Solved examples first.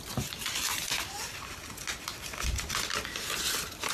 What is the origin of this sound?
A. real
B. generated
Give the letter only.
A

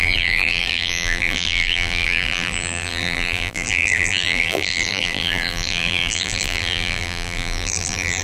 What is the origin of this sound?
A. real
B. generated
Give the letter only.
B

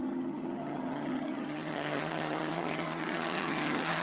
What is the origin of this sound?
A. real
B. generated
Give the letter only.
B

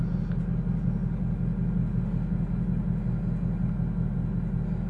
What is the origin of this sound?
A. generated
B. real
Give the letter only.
B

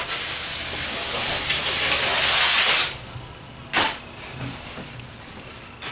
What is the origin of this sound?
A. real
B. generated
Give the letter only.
A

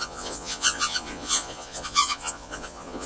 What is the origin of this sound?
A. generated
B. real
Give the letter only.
A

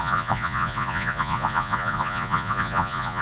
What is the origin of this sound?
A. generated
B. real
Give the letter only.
A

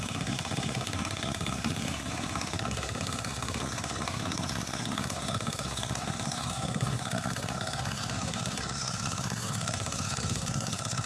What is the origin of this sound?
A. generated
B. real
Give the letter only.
A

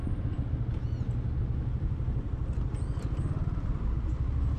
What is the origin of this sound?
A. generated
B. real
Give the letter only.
B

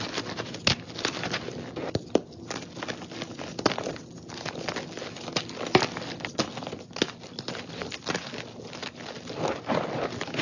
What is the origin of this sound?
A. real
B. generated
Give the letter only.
A